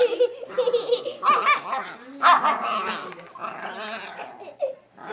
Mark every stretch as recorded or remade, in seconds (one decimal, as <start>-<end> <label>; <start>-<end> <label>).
0.0-5.1 recorded